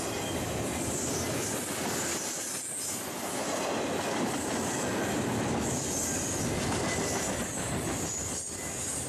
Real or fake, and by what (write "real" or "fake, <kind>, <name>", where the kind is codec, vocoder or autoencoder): real